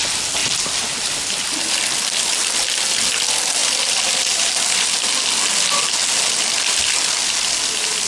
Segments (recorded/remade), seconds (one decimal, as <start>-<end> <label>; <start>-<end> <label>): 0.0-8.1 recorded